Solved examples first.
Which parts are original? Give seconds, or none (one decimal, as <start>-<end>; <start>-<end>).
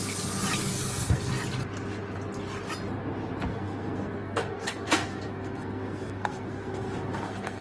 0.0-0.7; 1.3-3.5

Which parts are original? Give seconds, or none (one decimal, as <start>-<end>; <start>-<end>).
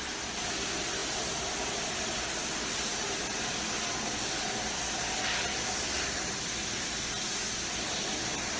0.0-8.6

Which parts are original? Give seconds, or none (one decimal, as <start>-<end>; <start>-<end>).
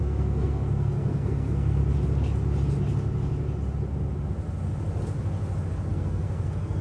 1.8-5.9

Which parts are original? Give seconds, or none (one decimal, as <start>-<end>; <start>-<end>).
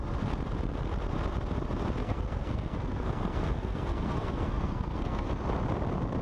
0.0-2.0; 5.3-6.2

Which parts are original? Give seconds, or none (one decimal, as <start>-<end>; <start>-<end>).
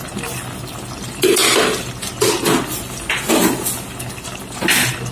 0.0-5.1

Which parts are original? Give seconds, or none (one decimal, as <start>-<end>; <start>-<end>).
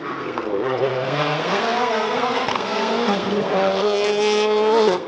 none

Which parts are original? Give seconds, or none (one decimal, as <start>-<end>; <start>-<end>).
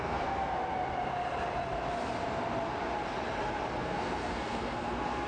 0.6-3.8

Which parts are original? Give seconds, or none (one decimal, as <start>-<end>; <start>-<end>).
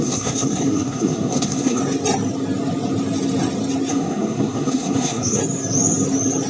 1.8-3.9; 5.4-6.5